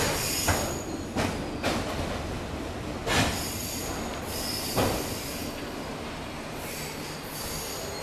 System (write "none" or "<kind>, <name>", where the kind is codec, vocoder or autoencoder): none